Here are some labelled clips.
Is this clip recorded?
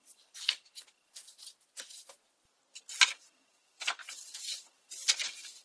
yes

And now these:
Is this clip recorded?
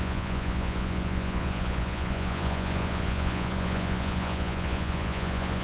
no